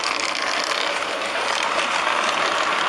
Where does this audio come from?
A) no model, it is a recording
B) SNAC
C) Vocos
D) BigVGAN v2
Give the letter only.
A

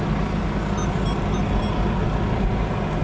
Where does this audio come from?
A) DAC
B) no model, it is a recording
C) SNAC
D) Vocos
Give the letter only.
B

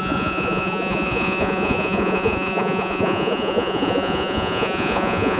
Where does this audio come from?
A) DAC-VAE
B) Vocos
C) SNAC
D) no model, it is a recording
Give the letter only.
B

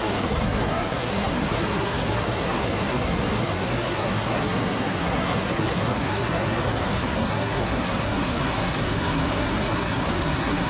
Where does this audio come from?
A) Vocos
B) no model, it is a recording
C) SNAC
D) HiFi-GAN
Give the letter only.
C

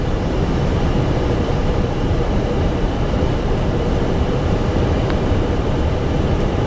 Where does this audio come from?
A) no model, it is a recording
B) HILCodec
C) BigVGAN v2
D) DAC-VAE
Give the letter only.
C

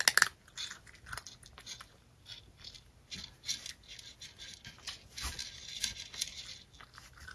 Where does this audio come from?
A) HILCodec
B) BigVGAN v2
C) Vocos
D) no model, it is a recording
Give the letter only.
D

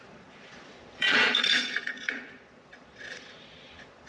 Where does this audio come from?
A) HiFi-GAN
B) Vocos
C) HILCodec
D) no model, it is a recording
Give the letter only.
B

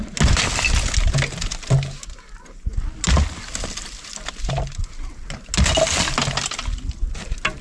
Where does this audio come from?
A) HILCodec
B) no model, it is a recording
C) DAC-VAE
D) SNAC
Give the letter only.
B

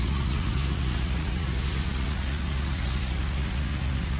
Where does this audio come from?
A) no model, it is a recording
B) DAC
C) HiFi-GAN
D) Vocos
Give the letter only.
D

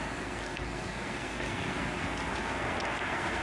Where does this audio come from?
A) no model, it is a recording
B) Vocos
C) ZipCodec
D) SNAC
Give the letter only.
D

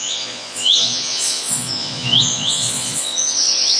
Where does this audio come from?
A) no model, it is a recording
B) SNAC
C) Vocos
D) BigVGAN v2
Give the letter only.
C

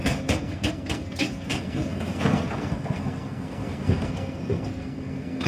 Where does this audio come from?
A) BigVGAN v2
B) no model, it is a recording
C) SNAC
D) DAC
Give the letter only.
C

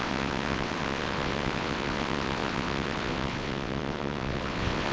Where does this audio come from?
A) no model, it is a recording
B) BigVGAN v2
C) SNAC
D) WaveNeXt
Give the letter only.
D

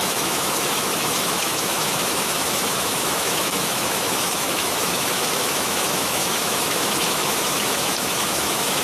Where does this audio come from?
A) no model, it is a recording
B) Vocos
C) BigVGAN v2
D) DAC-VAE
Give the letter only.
D